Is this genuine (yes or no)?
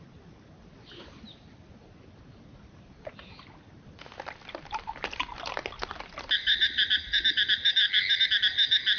yes